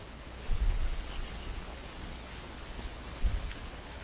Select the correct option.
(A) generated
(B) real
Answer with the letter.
A